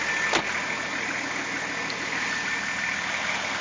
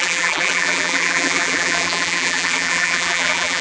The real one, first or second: first